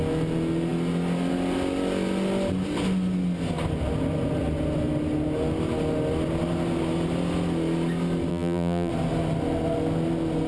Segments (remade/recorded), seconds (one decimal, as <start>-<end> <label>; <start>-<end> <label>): 0.0-8.3 recorded; 8.3-8.9 remade; 8.9-10.5 recorded